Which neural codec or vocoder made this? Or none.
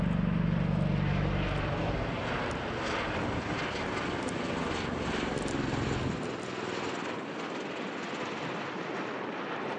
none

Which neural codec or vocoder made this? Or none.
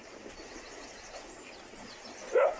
none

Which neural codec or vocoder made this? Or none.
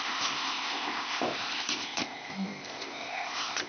codec, ZipCodec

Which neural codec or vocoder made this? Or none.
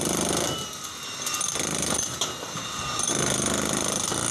none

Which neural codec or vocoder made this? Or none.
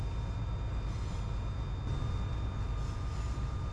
none